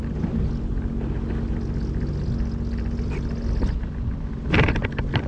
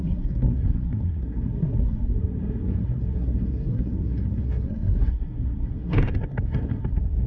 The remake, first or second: second